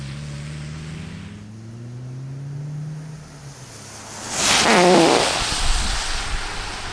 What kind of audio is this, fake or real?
real